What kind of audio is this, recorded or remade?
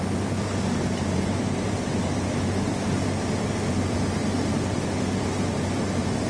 remade